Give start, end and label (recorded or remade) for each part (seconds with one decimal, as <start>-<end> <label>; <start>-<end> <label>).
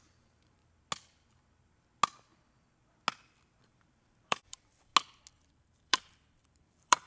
0.0-0.6 remade; 0.6-3.6 recorded; 3.6-4.9 remade; 4.9-5.5 recorded; 5.5-7.1 remade